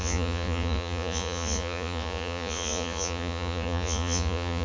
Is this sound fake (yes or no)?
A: yes